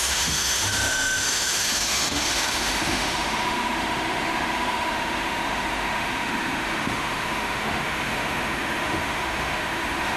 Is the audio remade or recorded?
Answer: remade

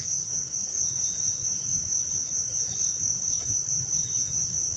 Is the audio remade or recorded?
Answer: remade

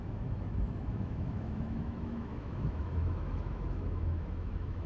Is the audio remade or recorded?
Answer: remade